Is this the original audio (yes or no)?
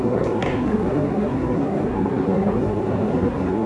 no